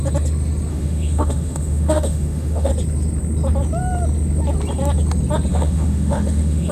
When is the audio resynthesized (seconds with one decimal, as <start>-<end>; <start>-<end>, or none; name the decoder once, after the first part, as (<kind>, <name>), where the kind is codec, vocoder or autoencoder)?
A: 0.7-2.7 (autoencoder, DAC-VAE); 5.5-6.7